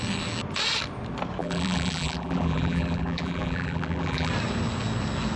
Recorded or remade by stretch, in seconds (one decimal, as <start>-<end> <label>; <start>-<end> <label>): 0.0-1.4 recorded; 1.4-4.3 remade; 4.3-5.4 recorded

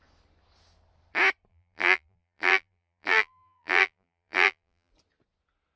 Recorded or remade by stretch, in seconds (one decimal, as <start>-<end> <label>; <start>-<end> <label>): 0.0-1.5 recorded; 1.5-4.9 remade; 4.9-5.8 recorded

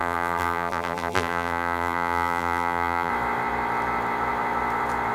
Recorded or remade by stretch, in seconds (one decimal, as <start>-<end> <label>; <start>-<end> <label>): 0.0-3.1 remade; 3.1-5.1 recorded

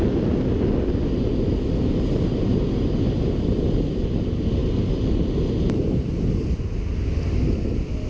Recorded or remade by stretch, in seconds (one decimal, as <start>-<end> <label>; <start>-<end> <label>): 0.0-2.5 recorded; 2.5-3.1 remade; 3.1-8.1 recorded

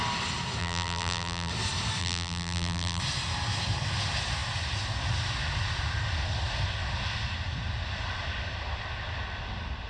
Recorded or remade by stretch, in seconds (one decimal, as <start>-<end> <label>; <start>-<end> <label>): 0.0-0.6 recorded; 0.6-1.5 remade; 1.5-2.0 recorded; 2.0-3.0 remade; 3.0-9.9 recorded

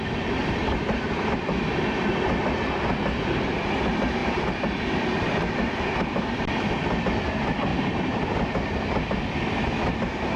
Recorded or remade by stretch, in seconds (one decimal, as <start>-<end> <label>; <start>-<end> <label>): 0.0-0.6 recorded; 0.6-1.4 remade; 1.4-7.7 recorded; 7.7-8.3 remade; 8.3-10.4 recorded

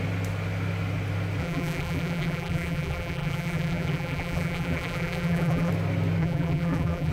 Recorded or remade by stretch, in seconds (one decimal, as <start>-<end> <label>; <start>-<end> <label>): 0.0-1.4 recorded; 1.4-5.7 remade; 5.7-6.2 recorded; 6.2-7.1 remade